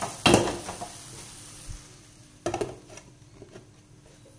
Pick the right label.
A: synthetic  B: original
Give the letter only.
B